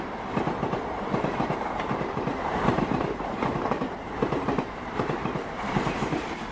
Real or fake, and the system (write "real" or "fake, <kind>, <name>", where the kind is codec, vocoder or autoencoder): fake, vocoder, BigVGAN v2